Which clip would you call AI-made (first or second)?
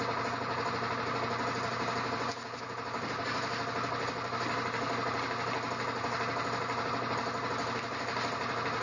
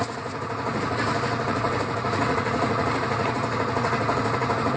second